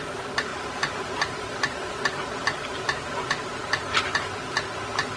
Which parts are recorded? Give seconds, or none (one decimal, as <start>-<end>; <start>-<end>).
0.0-5.2